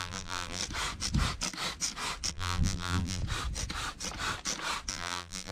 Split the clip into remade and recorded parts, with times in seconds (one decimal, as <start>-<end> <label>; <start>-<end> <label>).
0.0-0.6 remade; 0.6-2.3 recorded; 2.3-3.2 remade; 3.2-4.9 recorded; 4.9-5.5 remade

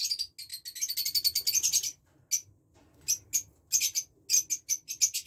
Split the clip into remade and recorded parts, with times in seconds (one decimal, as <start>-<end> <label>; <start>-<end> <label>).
0.0-5.3 recorded

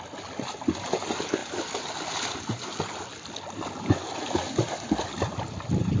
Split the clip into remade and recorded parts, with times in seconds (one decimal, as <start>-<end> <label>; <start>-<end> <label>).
0.0-6.0 recorded

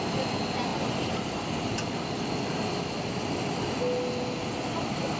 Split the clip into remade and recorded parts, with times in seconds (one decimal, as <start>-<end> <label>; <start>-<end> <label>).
0.0-5.2 recorded

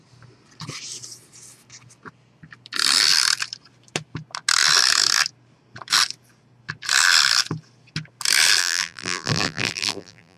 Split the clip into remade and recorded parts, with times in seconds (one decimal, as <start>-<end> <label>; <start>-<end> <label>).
0.0-8.6 recorded; 8.6-10.4 remade

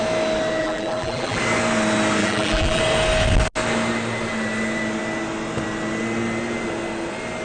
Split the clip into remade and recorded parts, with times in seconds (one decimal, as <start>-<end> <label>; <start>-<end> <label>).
0.0-0.6 recorded; 0.6-1.4 remade; 1.4-2.2 recorded; 2.2-2.8 remade; 2.8-7.4 recorded